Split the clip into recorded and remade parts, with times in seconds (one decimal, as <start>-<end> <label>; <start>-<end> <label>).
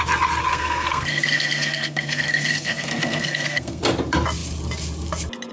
0.0-0.5 recorded; 0.5-3.8 remade; 3.8-5.5 recorded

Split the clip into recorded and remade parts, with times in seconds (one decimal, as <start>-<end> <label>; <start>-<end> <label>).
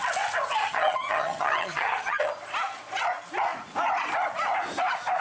0.0-0.6 recorded; 0.6-2.3 remade; 2.3-5.2 recorded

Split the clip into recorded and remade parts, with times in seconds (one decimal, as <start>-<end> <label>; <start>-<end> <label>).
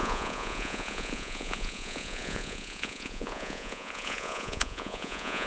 0.0-5.5 remade